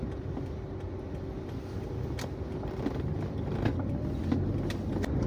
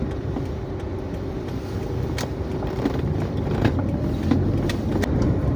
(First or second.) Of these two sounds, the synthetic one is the second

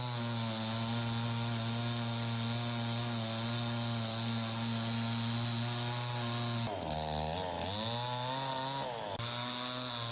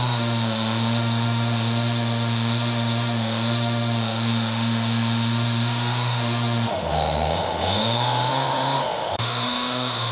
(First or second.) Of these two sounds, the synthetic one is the second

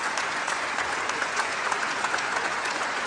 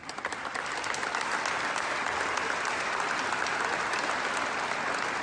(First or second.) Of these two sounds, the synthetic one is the first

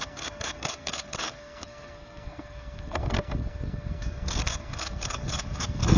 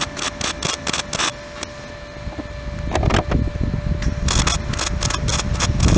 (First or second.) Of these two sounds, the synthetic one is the first